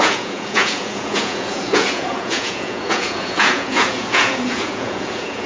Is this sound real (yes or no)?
no